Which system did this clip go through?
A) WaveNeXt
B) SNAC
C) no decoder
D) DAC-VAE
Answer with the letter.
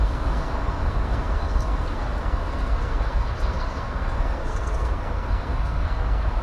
B